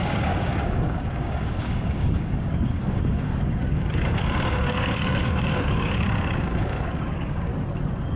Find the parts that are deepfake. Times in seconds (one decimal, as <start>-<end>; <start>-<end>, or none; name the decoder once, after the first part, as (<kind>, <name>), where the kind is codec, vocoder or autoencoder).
0.0-7.5 (codec, DAC)